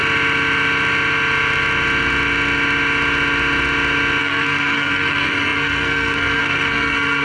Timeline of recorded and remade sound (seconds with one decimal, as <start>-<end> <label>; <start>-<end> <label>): 0.0-4.2 recorded; 4.2-7.2 remade